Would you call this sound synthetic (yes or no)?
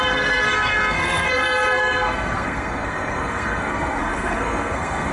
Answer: yes